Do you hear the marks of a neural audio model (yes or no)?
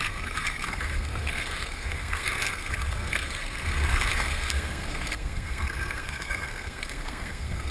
yes